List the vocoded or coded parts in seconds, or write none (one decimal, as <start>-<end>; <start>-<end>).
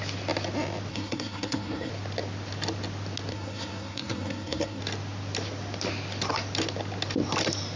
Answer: 0.9-1.9; 3.3-4.8